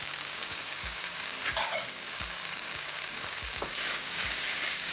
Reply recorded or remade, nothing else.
remade